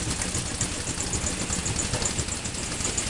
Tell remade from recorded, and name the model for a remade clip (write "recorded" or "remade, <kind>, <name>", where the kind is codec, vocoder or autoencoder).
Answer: recorded